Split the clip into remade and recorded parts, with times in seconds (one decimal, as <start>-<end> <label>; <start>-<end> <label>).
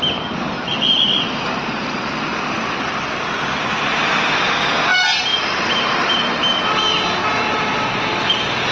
0.0-8.7 recorded